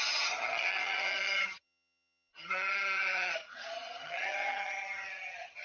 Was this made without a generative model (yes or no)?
no